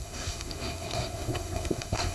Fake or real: fake